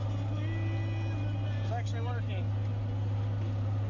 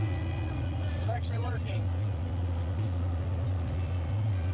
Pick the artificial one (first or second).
second